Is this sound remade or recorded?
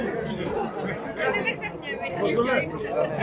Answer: recorded